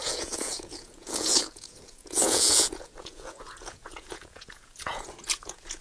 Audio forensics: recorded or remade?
remade